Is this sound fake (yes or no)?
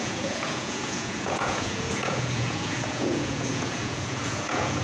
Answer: yes